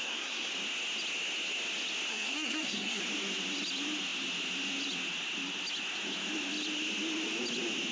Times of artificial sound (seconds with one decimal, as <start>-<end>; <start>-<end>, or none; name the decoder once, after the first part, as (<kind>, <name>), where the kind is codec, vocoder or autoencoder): 0.0-0.5 (codec, SNAC); 2.1-3.0